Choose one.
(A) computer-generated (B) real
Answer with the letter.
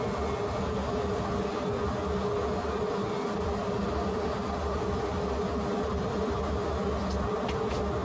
B